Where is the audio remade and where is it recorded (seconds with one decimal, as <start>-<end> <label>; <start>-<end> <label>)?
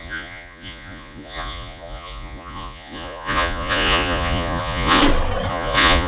0.0-5.0 remade; 5.0-5.5 recorded; 5.5-6.1 remade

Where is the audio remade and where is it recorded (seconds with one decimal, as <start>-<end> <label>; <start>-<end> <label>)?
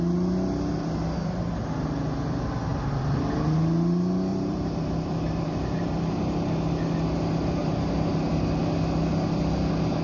0.0-2.7 recorded; 2.7-3.2 remade; 3.2-4.3 recorded; 4.3-6.0 remade; 6.0-7.6 recorded; 7.6-8.3 remade; 8.3-10.0 recorded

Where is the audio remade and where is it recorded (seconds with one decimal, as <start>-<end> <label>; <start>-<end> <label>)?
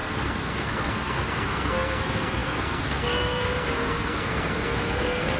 0.0-5.4 remade